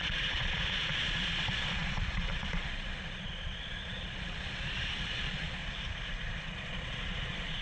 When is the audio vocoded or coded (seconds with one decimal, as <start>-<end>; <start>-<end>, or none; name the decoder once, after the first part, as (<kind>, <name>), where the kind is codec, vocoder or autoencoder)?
0.0-5.6 (vocoder, Vocos); 6.4-7.6